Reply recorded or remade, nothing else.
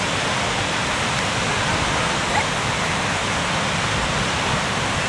recorded